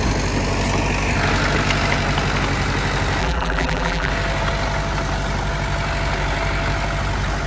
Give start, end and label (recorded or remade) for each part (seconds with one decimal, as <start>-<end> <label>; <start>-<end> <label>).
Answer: 0.0-3.2 recorded; 3.2-4.1 remade; 4.1-7.5 recorded